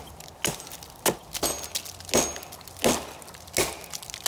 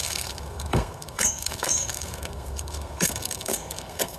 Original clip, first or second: first